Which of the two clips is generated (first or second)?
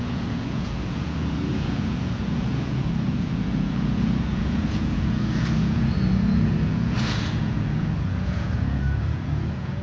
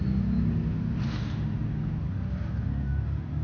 first